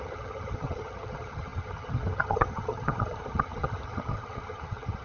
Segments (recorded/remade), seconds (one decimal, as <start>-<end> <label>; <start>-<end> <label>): 0.0-5.0 remade